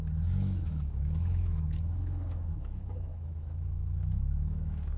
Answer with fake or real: fake